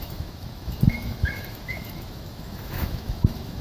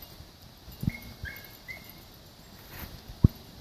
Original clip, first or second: second